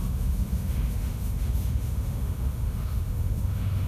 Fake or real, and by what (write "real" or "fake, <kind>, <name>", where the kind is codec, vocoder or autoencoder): fake, autoencoder, DAC-VAE